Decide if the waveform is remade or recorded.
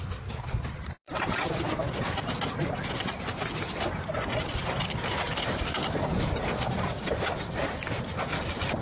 recorded